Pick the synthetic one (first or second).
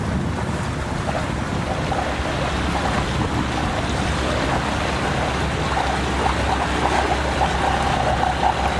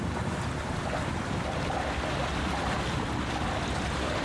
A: second